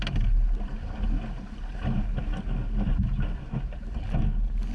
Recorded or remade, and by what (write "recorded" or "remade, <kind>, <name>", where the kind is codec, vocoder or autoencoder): recorded